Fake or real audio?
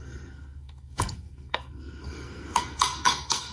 fake